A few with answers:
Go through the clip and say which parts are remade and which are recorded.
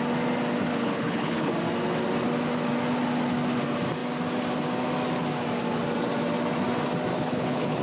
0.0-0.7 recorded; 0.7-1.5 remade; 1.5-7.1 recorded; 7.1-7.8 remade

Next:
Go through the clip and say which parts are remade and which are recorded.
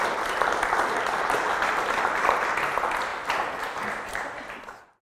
0.0-3.1 remade; 3.1-4.1 recorded; 4.1-5.1 remade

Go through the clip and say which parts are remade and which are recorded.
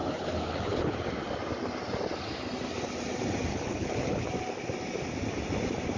0.0-1.1 remade; 1.1-3.5 recorded; 3.5-4.3 remade; 4.3-6.0 recorded